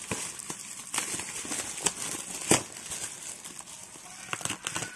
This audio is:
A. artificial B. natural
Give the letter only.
B